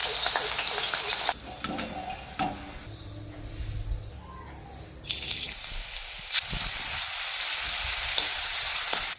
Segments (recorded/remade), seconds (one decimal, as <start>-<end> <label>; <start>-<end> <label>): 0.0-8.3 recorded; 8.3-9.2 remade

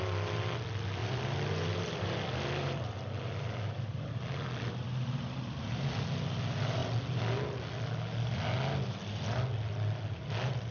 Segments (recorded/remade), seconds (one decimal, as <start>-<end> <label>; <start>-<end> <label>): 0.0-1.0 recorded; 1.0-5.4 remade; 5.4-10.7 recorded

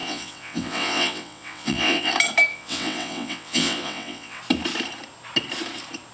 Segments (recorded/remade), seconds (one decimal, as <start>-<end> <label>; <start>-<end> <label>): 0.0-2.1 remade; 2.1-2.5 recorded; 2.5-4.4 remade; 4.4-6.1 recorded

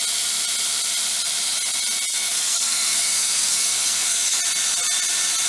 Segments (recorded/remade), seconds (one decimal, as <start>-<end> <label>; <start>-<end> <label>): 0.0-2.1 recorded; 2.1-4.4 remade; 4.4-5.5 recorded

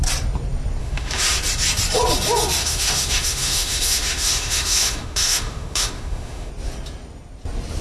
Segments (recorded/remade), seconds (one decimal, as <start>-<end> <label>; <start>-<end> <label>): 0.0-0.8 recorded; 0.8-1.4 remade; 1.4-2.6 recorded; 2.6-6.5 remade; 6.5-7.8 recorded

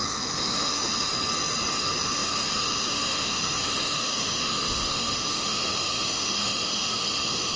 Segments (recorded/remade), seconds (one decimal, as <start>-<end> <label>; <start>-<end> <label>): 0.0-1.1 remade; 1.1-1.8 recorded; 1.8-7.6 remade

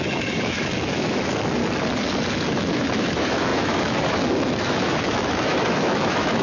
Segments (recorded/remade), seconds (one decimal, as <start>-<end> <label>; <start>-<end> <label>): 0.0-1.6 remade; 1.6-2.5 recorded; 2.5-6.4 remade

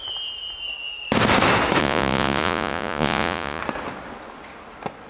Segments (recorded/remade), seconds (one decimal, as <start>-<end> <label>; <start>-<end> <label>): 0.0-1.8 recorded; 1.8-3.6 remade; 3.6-5.1 recorded